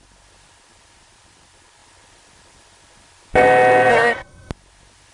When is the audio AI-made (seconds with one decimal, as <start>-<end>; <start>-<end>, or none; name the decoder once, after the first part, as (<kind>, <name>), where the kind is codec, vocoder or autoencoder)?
3.9-4.5 (codec, SNAC)